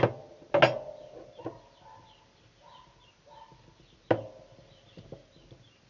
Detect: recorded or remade recorded